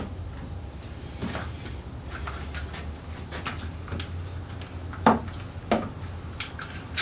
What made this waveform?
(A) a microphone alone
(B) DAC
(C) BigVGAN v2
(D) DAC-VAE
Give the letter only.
A